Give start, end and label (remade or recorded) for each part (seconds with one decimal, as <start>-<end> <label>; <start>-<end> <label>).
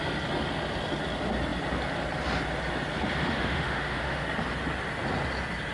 0.0-3.2 recorded; 3.2-4.2 remade; 4.2-5.7 recorded